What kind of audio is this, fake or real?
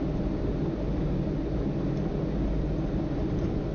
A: real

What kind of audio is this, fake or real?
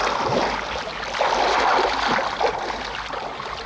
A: real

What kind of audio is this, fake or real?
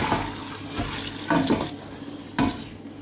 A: real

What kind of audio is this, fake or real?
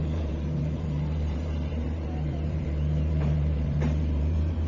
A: fake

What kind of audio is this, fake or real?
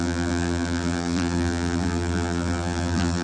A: fake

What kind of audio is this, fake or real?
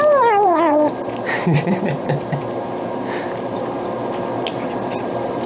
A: fake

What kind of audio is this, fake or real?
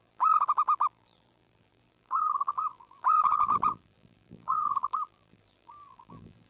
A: fake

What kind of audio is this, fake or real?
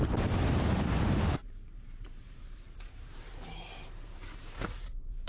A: fake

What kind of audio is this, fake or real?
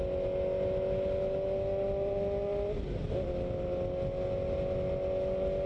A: real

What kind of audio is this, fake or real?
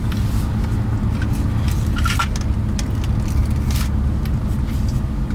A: real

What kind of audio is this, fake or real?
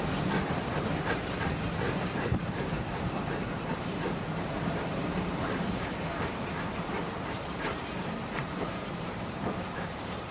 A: fake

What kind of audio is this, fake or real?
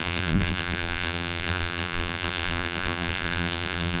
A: fake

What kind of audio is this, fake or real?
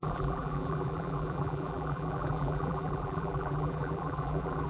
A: fake